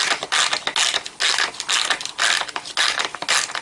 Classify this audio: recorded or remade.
recorded